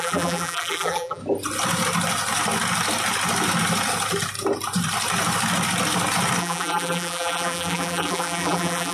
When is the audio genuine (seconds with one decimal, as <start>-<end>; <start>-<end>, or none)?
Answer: 1.2-6.4

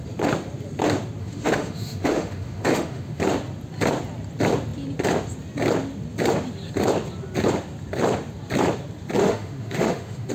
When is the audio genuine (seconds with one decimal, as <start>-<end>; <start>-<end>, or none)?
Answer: 0.0-1.2; 3.2-9.2